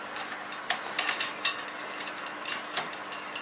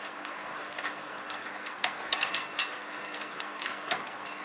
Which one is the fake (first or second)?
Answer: second